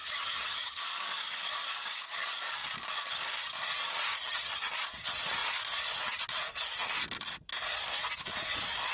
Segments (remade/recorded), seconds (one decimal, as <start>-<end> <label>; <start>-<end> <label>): 0.0-0.8 remade; 0.8-4.1 recorded; 4.1-4.7 remade; 4.7-8.9 recorded